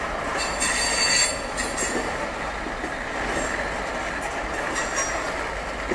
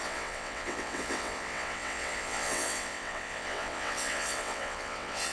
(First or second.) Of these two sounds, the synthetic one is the second